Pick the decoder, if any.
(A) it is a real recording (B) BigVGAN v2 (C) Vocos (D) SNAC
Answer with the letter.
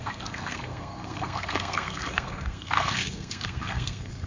D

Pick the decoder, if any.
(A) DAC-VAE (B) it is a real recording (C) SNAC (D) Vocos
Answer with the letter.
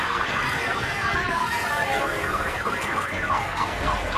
C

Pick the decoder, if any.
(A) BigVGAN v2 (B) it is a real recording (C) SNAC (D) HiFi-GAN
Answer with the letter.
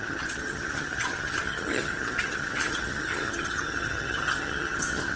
D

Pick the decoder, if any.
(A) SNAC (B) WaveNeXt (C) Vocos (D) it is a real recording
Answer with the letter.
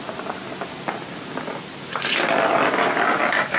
D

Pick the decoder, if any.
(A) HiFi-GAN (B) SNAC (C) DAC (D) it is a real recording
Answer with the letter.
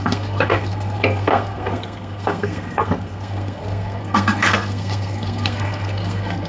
B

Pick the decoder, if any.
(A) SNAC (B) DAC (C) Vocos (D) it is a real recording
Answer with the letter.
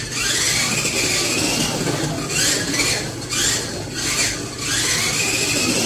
D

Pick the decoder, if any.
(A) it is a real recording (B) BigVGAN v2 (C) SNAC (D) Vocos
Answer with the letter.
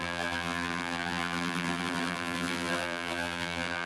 B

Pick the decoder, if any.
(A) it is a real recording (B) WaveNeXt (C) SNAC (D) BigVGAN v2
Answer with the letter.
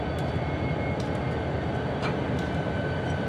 A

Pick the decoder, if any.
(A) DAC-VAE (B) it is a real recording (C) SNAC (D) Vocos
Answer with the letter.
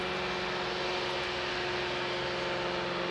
B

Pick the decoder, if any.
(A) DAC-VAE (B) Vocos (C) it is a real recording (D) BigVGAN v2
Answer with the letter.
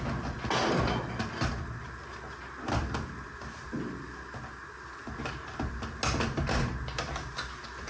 C